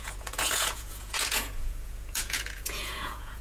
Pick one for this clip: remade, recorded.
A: remade